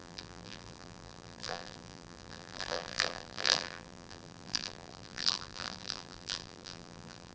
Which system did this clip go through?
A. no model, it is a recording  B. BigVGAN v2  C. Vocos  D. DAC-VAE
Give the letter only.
B